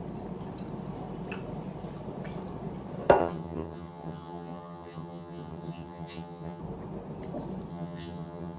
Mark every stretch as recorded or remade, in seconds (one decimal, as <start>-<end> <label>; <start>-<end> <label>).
0.0-3.2 recorded; 3.2-6.6 remade; 6.6-7.7 recorded; 7.7-8.6 remade